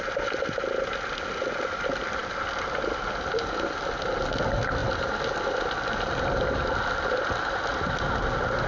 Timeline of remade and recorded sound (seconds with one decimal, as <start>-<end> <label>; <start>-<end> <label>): 0.0-8.7 recorded